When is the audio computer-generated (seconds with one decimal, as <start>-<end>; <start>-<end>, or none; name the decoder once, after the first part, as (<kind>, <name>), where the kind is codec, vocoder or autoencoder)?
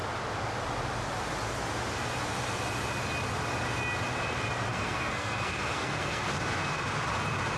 4.7-6.2 (codec, SNAC)